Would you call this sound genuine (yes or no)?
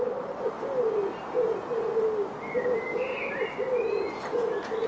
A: yes